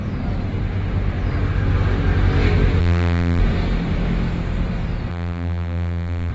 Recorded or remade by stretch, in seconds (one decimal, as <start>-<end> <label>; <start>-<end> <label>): 0.0-2.8 recorded; 2.8-3.4 remade; 3.4-5.1 recorded; 5.1-6.3 remade